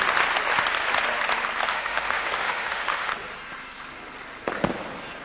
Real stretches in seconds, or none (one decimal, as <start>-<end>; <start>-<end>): 0.0-1.7; 3.1-5.2